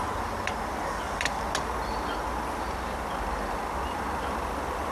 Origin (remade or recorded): recorded